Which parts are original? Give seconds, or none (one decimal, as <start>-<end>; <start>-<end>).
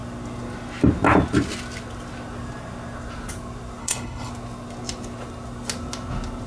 0.0-3.8; 4.3-6.5